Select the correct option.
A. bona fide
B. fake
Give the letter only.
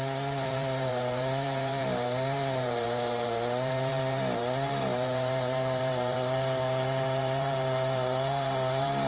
B